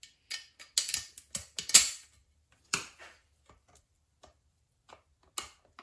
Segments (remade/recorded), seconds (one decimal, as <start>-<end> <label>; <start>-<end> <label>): 0.0-2.2 recorded; 2.2-4.9 remade; 4.9-5.8 recorded